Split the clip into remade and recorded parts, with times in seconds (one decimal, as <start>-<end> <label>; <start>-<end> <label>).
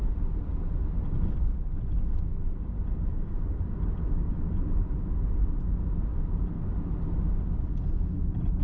0.0-2.3 recorded; 2.3-3.7 remade; 3.7-4.3 recorded; 4.3-5.4 remade; 5.4-8.6 recorded